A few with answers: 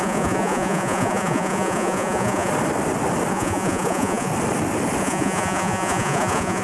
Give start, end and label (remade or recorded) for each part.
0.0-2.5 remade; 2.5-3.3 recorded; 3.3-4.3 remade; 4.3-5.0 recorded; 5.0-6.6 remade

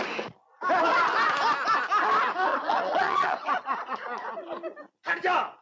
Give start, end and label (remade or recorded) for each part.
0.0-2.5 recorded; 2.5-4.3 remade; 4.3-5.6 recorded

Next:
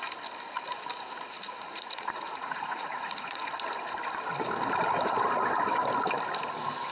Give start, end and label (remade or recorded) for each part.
0.0-1.7 recorded; 1.7-3.5 remade; 3.5-6.9 recorded

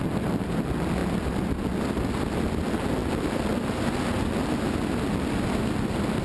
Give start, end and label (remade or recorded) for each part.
0.0-6.2 recorded

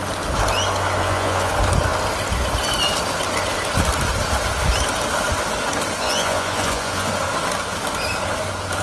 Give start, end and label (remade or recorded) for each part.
0.0-1.0 recorded; 1.0-1.5 remade; 1.5-6.0 recorded; 6.0-7.1 remade; 7.1-8.8 recorded

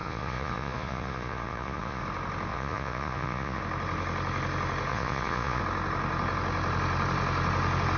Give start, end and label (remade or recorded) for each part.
0.0-2.0 remade; 2.0-2.5 recorded; 2.5-3.6 remade; 3.6-4.9 recorded; 4.9-5.6 remade; 5.6-8.0 recorded